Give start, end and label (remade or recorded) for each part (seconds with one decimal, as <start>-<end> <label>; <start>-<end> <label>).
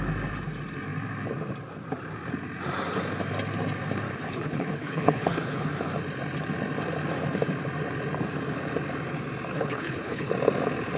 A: 0.0-4.1 recorded; 4.1-5.7 remade; 5.7-9.5 recorded; 9.5-10.3 remade; 10.3-11.0 recorded